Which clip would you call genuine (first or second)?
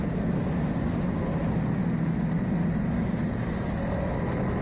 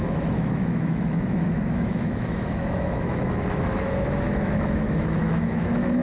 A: first